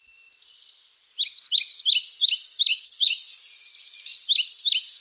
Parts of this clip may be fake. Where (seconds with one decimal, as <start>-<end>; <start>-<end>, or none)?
2.7-3.4